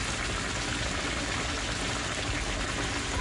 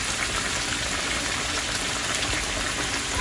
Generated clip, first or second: second